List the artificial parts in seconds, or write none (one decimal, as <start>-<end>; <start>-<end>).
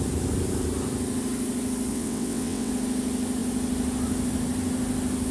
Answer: 1.9-2.7